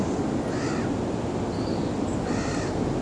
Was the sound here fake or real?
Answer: real